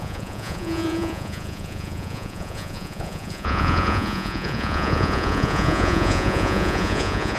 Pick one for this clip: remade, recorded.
remade